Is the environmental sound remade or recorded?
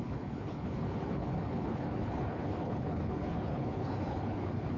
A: remade